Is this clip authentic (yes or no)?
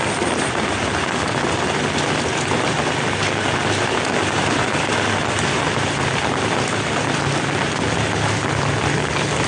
yes